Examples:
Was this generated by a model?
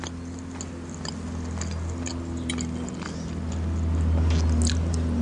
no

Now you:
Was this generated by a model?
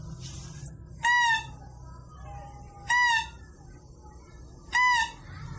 no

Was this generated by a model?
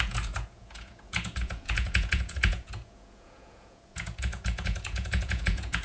yes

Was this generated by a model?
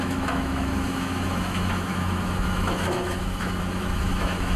yes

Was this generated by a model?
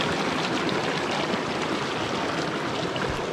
no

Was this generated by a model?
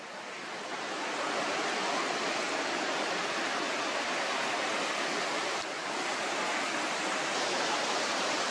no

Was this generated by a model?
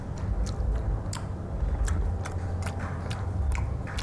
no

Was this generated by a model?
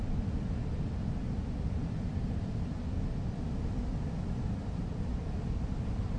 no